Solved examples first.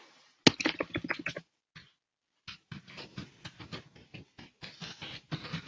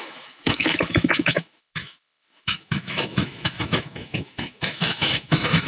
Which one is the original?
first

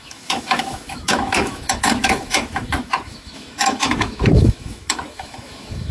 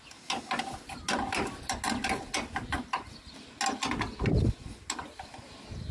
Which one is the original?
second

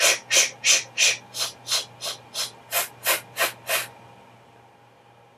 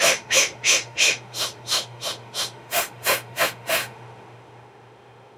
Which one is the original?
first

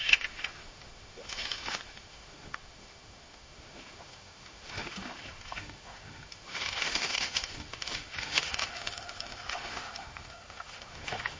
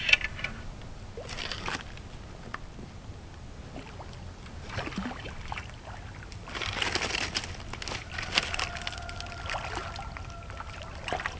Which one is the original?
second